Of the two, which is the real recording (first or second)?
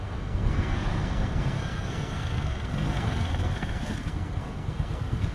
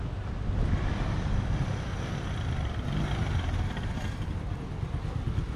second